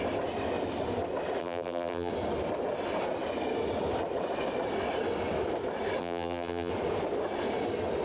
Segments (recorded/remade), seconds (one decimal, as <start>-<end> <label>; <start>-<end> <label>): 0.0-1.4 recorded; 1.4-2.1 remade; 2.1-6.0 recorded; 6.0-6.7 remade; 6.7-8.0 recorded